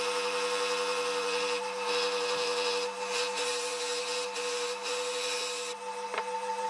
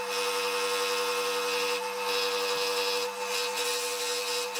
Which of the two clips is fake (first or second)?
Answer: first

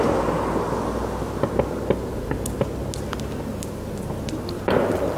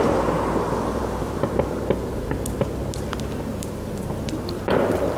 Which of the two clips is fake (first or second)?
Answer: second